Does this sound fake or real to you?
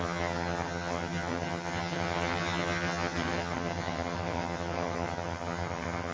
fake